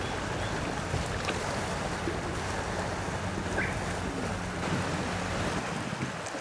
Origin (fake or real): real